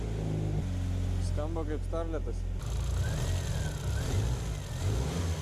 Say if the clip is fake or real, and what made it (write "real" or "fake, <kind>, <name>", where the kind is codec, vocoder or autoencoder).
real